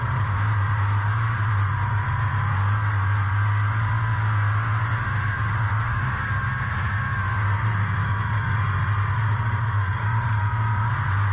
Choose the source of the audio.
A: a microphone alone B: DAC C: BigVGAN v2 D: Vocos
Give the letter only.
A